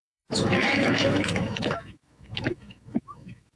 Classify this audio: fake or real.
fake